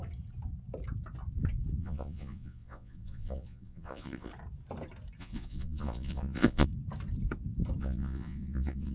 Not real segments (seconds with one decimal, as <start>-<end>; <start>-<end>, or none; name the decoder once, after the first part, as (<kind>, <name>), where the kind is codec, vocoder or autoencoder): 1.8-4.3 (vocoder, Vocos); 5.2-6.7; 7.8-8.9